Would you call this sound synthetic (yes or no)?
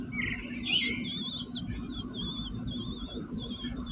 no